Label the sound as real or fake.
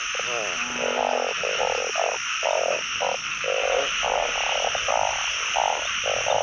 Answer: real